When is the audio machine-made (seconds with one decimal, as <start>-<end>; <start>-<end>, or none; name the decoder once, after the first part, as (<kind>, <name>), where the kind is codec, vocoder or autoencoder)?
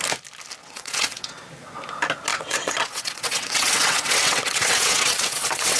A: 0.6-1.4 (vocoder, WaveNeXt); 2.3-5.8